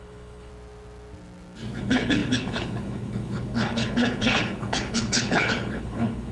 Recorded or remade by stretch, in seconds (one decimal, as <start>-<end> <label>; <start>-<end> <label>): 0.0-0.5 remade; 0.5-1.8 recorded; 1.8-6.3 remade